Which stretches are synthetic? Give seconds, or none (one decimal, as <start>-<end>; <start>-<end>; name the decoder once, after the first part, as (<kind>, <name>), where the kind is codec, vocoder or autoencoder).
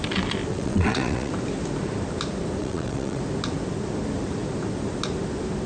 0.5-1.3 (vocoder, WaveNeXt); 2.6-3.2